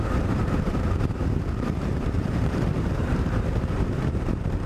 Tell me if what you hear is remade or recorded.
remade